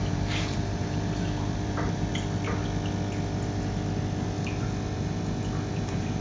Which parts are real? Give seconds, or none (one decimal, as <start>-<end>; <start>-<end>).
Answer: 2.1-5.8